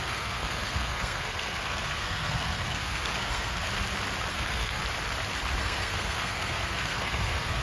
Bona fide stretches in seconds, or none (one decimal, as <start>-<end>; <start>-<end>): 3.7-4.3; 4.8-5.6